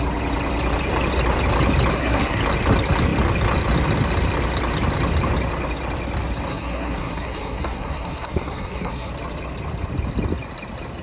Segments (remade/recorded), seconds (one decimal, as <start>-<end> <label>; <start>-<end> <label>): 0.0-1.9 recorded; 1.9-2.4 remade; 2.4-6.5 recorded; 6.5-9.1 remade; 9.1-11.0 recorded